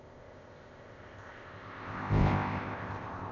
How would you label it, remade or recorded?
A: remade